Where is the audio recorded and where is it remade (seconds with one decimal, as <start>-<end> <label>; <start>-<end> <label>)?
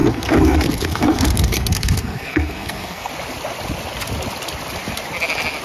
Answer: 0.0-3.1 remade; 3.1-5.6 recorded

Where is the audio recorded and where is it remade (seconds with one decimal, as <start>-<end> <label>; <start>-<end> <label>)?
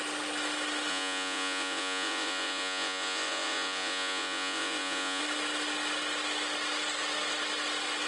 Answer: 0.0-0.9 recorded; 0.9-5.2 remade; 5.2-8.1 recorded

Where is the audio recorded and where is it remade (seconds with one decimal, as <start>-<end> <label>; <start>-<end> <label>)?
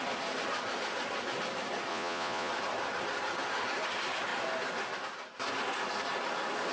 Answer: 0.0-1.9 recorded; 1.9-2.5 remade; 2.5-6.7 recorded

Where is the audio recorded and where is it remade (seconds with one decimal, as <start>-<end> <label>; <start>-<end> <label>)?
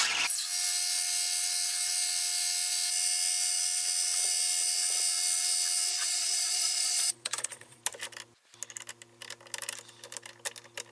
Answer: 0.0-5.9 recorded; 5.9-7.8 remade; 7.8-10.9 recorded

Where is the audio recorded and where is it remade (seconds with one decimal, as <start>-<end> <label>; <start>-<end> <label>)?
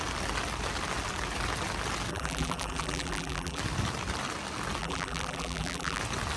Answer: 0.0-2.1 recorded; 2.1-3.6 remade; 3.6-4.8 recorded; 4.8-6.0 remade; 6.0-6.4 recorded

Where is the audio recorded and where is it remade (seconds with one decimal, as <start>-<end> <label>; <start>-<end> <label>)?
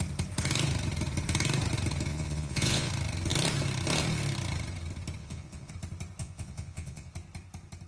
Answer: 0.0-2.1 recorded; 2.1-2.9 remade; 2.9-5.2 recorded; 5.2-5.7 remade; 5.7-6.2 recorded; 6.2-7.1 remade; 7.1-7.9 recorded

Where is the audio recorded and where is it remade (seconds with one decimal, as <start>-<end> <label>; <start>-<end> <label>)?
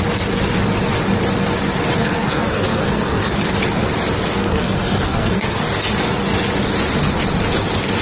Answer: 0.0-2.0 recorded; 2.0-3.3 remade; 3.3-4.4 recorded; 4.4-5.6 remade; 5.6-8.0 recorded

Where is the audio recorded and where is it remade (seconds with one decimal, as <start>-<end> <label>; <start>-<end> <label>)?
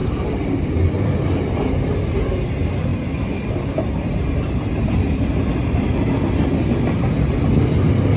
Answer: 0.0-8.2 recorded